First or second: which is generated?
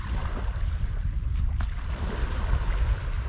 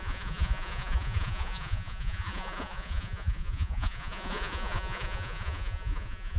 second